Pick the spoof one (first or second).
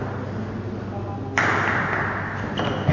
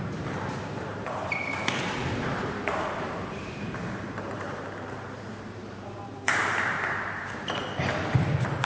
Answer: second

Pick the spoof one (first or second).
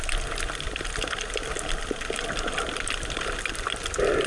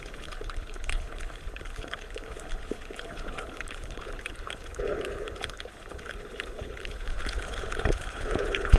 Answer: second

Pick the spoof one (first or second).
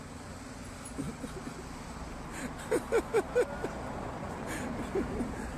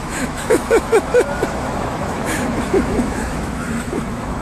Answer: second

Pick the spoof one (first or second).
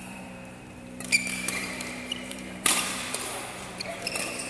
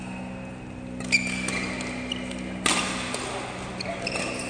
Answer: first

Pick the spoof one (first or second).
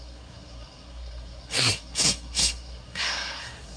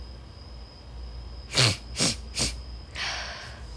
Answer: first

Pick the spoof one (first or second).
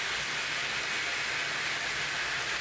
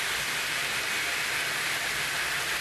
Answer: second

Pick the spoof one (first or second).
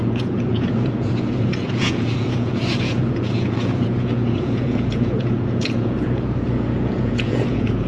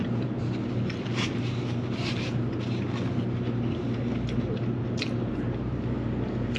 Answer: first